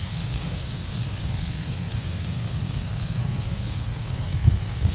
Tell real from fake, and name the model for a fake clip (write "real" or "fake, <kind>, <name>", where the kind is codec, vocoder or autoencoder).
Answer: fake, codec, SNAC